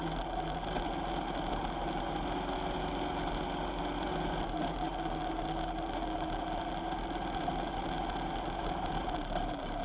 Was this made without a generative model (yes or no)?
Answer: yes